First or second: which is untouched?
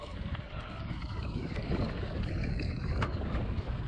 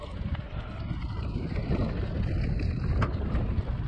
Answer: second